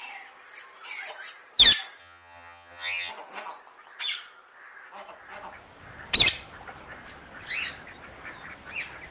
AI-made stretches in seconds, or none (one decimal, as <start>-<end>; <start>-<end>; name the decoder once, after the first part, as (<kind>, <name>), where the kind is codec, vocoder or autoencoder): 2.0-3.1 (vocoder, HiFi-GAN)